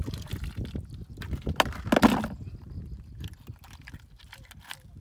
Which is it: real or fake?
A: real